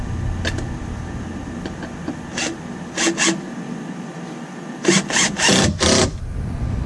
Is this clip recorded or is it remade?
recorded